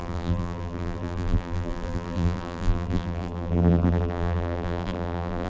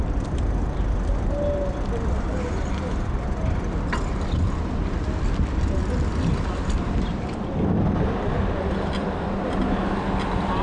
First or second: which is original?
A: second